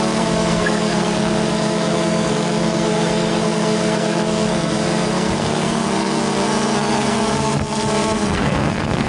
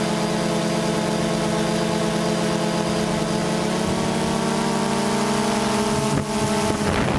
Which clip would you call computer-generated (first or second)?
first